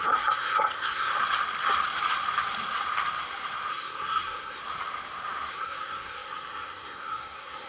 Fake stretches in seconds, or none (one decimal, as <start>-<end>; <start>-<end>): 0.0-1.1; 3.7-4.6; 5.5-7.7